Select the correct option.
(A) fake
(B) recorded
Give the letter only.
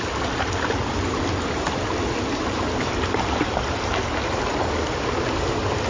B